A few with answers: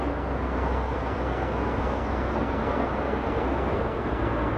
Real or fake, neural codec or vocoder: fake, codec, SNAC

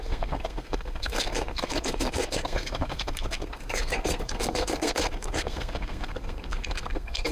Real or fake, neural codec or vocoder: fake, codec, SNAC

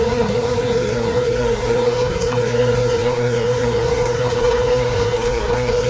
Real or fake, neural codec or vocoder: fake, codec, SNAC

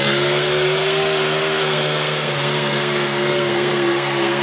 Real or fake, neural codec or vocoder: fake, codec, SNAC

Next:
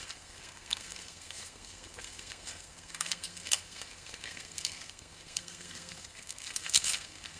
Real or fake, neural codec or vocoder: fake, codec, SNAC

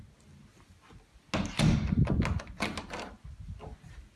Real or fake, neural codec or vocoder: real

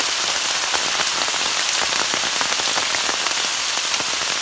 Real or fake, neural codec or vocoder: real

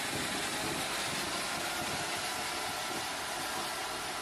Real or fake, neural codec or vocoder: real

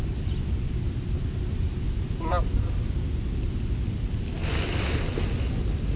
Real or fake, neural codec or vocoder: real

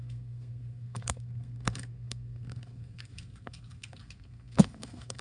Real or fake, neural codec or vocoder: fake, codec, SNAC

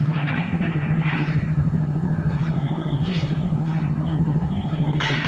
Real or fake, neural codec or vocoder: fake, codec, SNAC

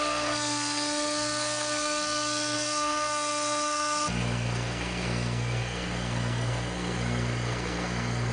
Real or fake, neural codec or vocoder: fake, codec, SNAC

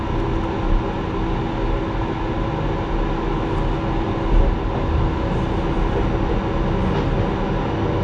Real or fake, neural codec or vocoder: real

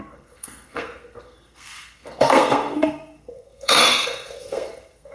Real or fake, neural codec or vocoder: fake, codec, SNAC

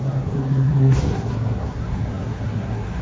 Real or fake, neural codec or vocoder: fake, codec, SNAC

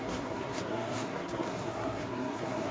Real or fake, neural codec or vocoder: fake, codec, SNAC